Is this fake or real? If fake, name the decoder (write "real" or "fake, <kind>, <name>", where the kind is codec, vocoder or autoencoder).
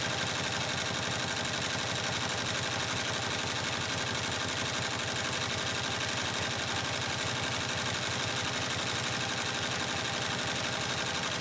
real